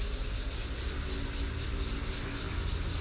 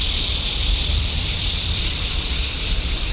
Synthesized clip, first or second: second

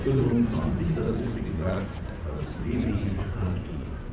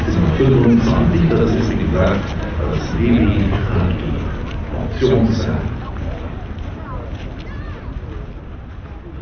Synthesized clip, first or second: first